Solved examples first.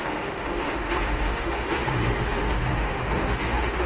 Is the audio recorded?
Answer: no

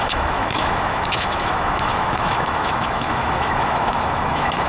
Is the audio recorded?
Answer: no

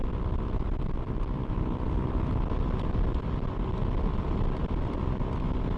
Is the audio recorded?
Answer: yes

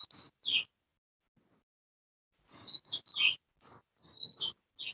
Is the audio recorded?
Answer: yes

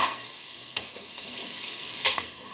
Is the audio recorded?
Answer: no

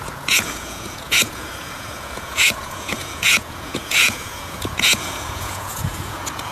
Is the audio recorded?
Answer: no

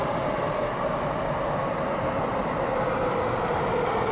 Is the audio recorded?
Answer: yes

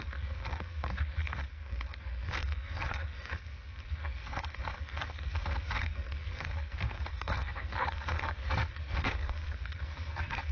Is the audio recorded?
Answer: no